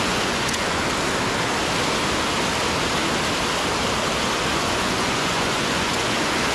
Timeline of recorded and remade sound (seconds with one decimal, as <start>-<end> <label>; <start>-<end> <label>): 0.0-0.8 remade; 0.8-4.5 recorded; 4.5-6.5 remade